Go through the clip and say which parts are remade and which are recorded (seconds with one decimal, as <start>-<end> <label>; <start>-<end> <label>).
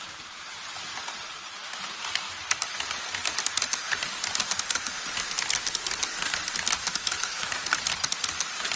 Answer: 0.0-6.8 recorded; 6.8-7.5 remade; 7.5-8.8 recorded